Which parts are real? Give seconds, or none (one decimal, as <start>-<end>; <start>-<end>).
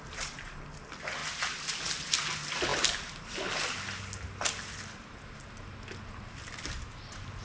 0.0-7.4